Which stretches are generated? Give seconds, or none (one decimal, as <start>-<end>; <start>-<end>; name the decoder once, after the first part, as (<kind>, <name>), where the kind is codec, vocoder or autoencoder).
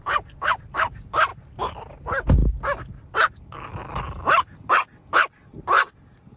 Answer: none